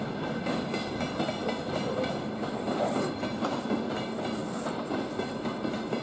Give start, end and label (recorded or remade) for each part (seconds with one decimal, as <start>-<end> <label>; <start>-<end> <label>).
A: 0.0-4.4 recorded; 4.4-5.3 remade; 5.3-6.0 recorded